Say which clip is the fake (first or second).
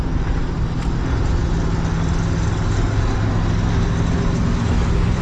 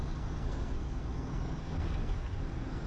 second